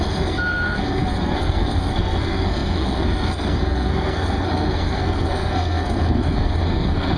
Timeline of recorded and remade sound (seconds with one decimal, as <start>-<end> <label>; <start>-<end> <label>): 0.0-7.2 remade